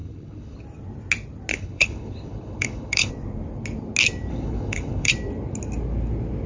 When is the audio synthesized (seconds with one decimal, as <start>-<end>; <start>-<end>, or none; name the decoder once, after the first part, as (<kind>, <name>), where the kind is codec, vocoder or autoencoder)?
0.0-0.6 (codec, HILCodec); 1.5-3.1; 4.3-5.1